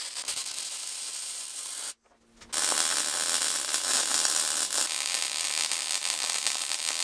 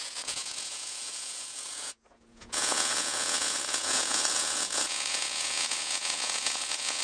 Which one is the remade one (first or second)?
second